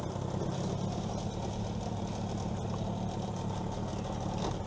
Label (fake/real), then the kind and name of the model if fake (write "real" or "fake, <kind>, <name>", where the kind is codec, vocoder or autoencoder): real